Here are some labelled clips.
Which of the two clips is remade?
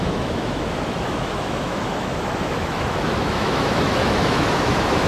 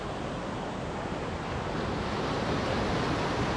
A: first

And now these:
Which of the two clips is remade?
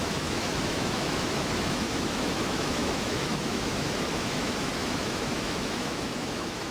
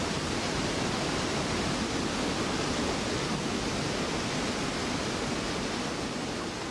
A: first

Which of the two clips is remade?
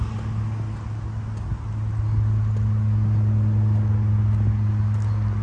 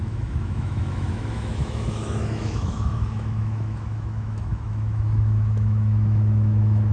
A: second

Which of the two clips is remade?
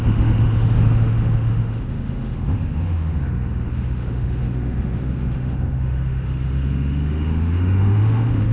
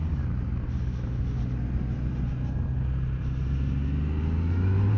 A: first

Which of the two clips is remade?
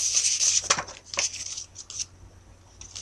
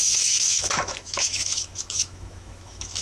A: second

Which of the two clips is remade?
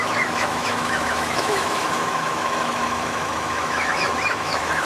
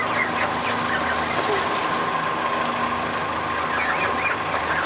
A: first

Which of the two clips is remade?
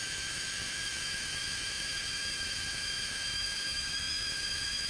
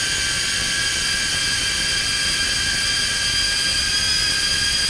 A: first